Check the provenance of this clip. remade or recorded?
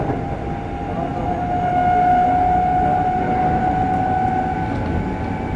recorded